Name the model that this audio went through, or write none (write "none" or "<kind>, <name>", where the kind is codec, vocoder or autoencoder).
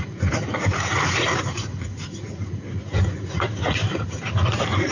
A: vocoder, Vocos